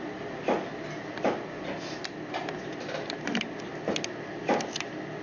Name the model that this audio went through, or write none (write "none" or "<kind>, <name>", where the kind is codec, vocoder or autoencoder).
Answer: none